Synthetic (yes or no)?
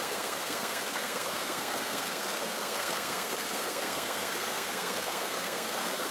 yes